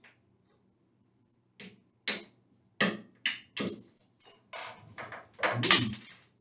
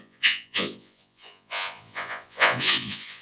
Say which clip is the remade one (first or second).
second